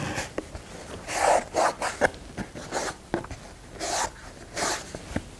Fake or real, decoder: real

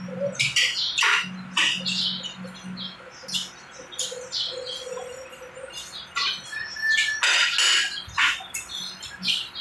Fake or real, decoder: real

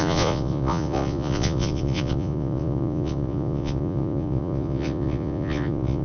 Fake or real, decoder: fake, vocoder, Vocos